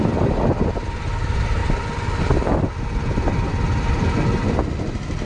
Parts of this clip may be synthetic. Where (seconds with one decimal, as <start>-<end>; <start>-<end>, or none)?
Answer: none